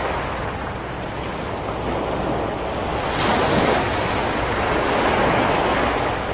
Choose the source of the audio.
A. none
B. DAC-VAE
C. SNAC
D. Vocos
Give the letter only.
A